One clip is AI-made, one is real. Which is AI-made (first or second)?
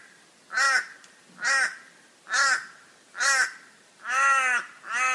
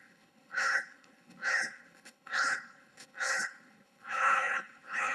second